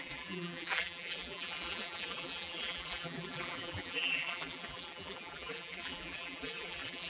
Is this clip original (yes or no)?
no